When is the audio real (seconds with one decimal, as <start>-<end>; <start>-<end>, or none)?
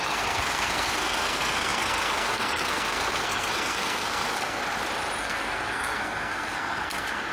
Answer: 4.6-5.2